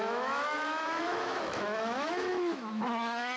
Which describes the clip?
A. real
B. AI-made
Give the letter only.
B